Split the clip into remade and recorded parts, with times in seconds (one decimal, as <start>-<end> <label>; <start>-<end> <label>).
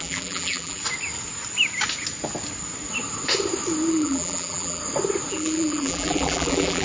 0.0-0.8 remade; 0.8-3.9 recorded; 3.9-4.8 remade; 4.8-5.3 recorded; 5.3-6.8 remade